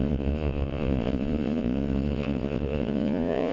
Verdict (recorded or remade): remade